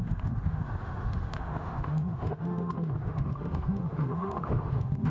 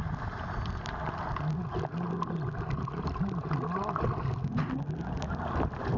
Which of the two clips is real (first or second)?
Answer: second